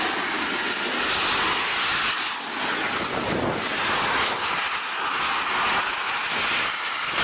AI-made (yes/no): no